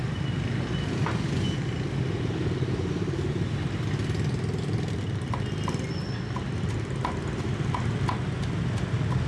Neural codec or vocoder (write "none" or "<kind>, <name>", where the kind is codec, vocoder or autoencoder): none